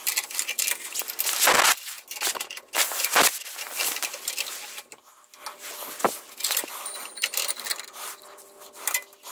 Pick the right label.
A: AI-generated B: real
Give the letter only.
B